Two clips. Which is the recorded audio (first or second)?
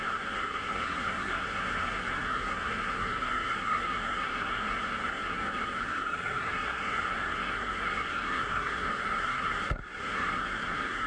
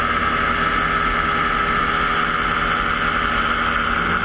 second